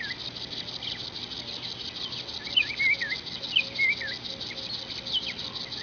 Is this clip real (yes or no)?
yes